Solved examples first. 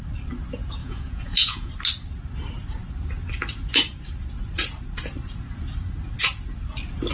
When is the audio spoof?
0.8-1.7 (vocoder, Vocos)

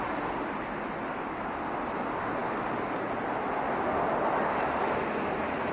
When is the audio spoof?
none